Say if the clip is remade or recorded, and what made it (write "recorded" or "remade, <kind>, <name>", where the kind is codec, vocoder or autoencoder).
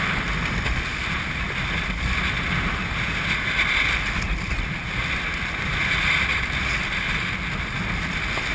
recorded